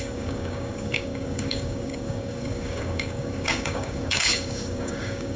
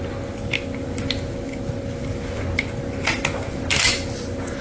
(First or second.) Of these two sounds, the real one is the second